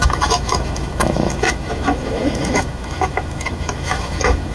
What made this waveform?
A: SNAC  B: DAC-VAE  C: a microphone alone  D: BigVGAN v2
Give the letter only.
B